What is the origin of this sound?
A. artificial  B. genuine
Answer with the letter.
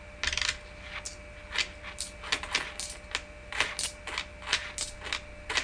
B